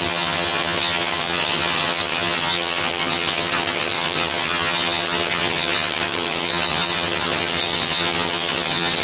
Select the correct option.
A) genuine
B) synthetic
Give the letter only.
B